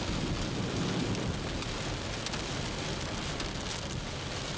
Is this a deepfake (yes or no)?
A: no